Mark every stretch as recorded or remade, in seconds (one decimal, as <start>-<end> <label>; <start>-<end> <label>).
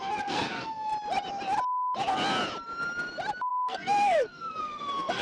0.0-0.9 remade; 0.9-3.5 recorded; 3.5-5.2 remade